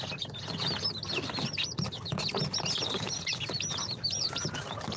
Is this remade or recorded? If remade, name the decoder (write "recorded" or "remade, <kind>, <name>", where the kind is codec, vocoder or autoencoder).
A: recorded